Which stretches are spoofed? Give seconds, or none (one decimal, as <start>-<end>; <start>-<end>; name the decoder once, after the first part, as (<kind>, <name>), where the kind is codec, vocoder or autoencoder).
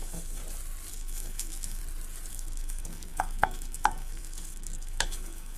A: 0.0-0.4 (codec, SNAC); 0.9-1.8; 2.3-5.6